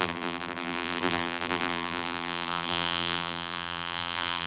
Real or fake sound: fake